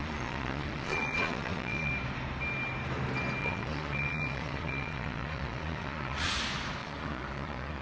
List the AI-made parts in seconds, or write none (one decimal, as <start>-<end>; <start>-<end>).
0.0-1.9; 3.4-6.3; 6.8-7.8